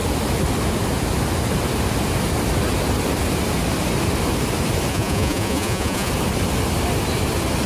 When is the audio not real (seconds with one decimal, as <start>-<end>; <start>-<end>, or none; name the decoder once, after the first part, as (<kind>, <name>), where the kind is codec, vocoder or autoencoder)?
4.9-6.1 (vocoder, Vocos)